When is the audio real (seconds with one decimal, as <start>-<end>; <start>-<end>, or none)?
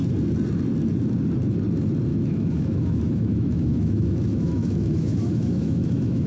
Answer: 0.0-2.1